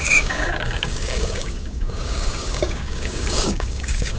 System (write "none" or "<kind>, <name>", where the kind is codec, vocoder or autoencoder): codec, DAC